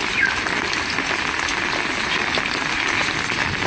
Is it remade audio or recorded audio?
recorded